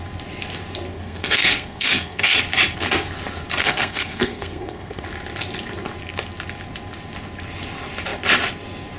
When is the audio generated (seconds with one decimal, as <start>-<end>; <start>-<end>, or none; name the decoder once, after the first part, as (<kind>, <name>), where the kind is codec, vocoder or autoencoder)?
0.9-2.4 (codec, SNAC); 3.6-5.0